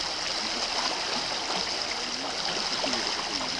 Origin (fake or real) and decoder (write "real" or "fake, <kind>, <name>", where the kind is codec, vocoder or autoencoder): real